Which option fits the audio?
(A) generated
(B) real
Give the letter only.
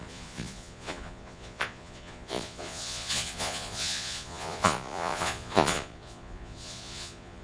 A